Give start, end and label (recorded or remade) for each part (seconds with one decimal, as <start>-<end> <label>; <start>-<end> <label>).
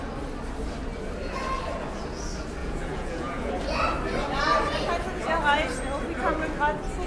0.0-2.6 recorded; 2.6-3.5 remade; 3.5-7.1 recorded